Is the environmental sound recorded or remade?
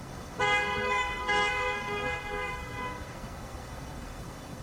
remade